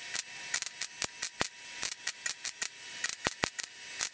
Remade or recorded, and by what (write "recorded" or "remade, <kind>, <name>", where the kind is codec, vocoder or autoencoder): recorded